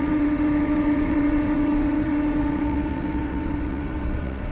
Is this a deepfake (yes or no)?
yes